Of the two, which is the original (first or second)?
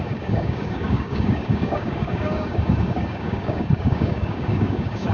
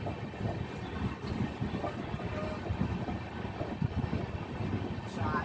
second